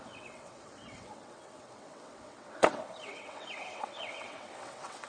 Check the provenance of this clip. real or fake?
fake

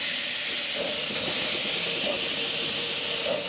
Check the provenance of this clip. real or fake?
real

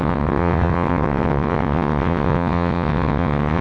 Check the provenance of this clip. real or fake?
fake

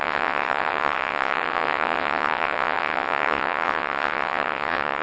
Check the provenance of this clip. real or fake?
fake